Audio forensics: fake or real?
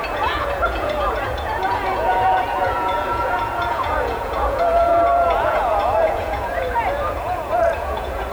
fake